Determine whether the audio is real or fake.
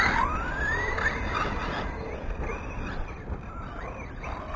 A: real